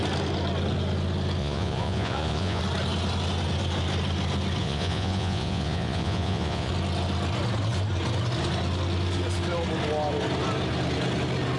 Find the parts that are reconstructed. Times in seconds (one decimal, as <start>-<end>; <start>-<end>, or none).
1.4-2.6; 4.6-6.7